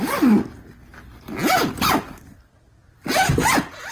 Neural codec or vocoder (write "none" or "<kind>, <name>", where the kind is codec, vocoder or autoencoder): none